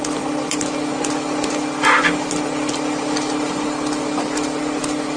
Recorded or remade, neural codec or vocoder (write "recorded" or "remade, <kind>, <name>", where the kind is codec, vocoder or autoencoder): recorded